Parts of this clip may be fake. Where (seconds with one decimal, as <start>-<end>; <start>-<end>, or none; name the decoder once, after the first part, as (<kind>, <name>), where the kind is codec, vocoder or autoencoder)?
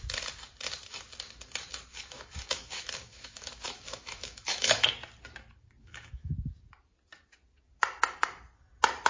1.9-4.9 (autoencoder, DAC-VAE); 5.8-6.3